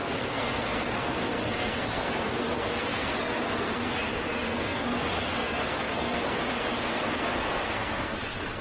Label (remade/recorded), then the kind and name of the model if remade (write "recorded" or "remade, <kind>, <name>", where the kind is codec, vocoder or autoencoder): remade, codec, SNAC